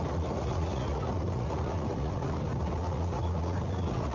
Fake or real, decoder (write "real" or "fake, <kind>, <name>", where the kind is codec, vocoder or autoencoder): fake, vocoder, Vocos